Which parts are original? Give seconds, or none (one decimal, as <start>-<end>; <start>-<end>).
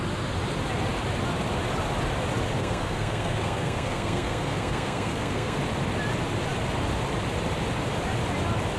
0.0-2.6; 5.6-8.8